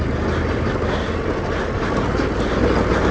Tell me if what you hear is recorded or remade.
recorded